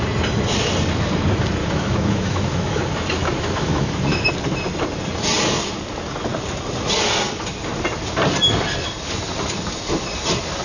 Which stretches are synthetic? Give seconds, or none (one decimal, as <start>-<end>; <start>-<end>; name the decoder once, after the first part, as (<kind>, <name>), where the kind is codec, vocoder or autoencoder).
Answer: 1.6-4.3 (autoencoder, DAC-VAE)